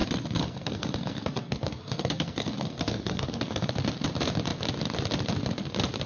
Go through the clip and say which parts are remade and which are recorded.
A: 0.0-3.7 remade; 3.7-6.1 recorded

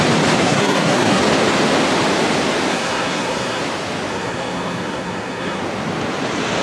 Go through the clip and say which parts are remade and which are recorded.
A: 0.0-0.4 recorded; 0.4-1.2 remade; 1.2-2.7 recorded; 2.7-3.6 remade; 3.6-4.1 recorded; 4.1-5.6 remade; 5.6-6.6 recorded

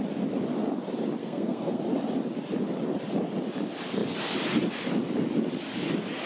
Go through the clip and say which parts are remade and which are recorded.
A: 0.0-1.2 recorded; 1.2-1.8 remade; 1.8-6.3 recorded

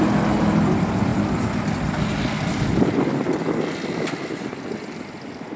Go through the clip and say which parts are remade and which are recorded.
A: 0.0-5.6 recorded

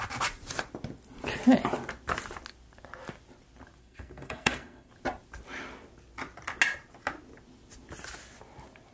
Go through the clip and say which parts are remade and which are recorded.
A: 0.0-3.8 recorded; 3.8-4.9 remade; 4.9-8.9 recorded

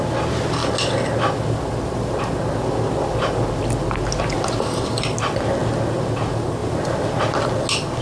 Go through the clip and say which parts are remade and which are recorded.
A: 0.0-8.0 recorded